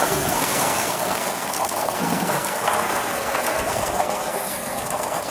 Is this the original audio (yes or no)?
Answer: no